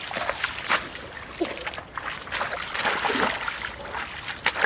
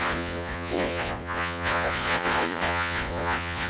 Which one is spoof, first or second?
second